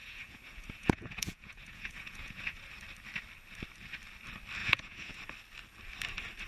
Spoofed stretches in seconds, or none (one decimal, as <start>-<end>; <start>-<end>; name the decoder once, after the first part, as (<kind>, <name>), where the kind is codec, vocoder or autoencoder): 0.0-2.6 (vocoder, Vocos); 4.6-5.2